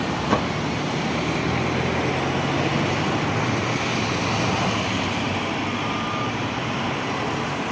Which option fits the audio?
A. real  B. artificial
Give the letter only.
A